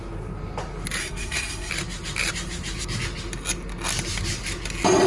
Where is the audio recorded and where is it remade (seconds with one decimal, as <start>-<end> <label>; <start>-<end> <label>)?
0.0-1.0 recorded; 1.0-1.7 remade; 1.7-5.1 recorded